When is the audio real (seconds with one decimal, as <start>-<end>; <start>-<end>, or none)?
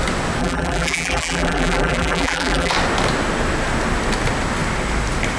0.0-0.4; 2.7-5.4